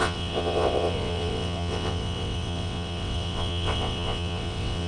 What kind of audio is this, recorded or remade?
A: remade